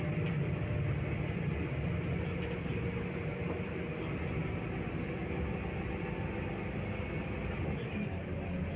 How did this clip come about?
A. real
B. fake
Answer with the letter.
A